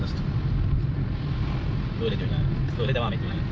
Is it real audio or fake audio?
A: real